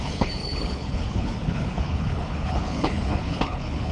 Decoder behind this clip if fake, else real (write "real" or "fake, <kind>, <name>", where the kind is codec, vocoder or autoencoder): fake, codec, HILCodec